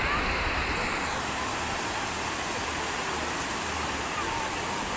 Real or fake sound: real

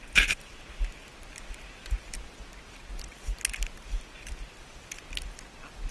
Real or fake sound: real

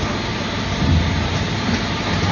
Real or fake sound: real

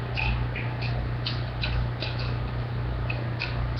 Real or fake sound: real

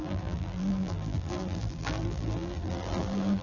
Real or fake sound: fake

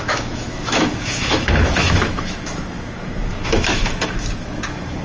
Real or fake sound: fake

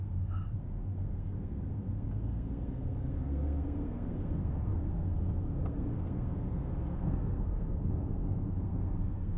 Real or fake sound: fake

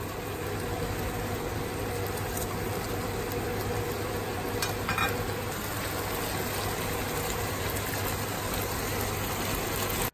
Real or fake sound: real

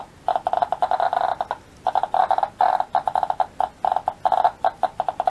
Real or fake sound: real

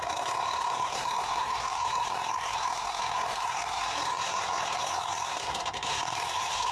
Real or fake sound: fake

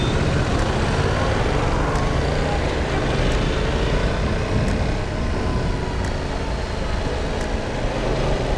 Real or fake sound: real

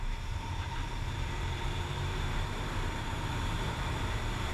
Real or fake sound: fake